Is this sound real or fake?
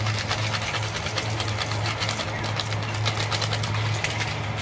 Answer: real